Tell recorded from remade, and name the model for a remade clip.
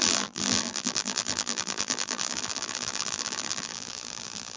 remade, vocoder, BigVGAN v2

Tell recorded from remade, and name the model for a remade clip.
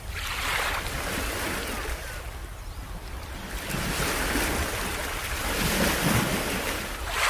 recorded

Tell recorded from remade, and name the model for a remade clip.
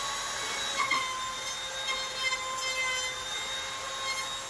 recorded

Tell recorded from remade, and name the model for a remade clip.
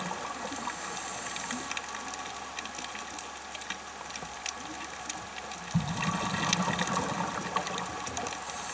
recorded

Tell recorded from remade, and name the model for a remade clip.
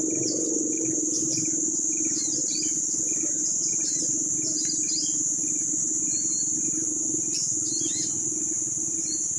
recorded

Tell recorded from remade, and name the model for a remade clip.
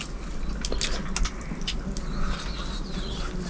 recorded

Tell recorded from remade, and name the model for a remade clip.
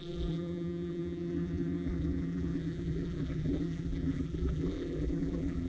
remade, vocoder, BigVGAN v2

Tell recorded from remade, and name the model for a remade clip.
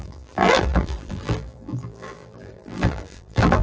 remade, vocoder, BigVGAN v2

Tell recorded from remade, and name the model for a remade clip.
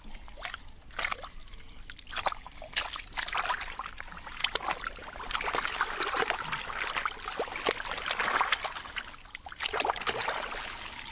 recorded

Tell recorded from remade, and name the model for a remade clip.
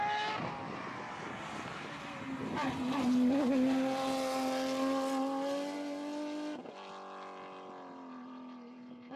recorded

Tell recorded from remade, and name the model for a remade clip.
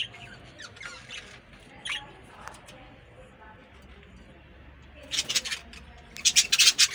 recorded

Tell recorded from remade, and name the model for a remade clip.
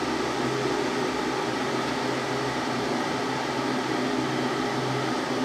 recorded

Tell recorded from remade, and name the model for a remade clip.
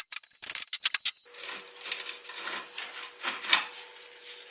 recorded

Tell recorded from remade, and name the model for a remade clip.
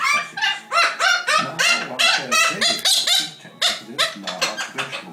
recorded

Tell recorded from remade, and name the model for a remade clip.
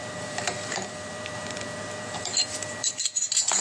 remade, vocoder, BigVGAN v2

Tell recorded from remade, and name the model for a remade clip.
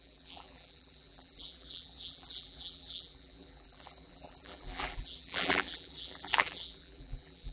remade, vocoder, BigVGAN v2